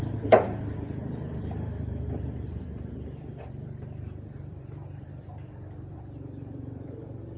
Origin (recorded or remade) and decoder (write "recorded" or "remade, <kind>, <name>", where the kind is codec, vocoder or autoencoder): remade, vocoder, BigVGAN v2